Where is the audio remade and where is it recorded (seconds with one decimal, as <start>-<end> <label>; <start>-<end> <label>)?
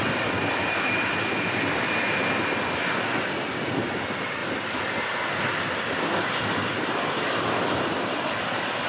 0.0-8.9 remade